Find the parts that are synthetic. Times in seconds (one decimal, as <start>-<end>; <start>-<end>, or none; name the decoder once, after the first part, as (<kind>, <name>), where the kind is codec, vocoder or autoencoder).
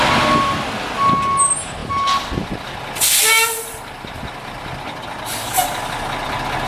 none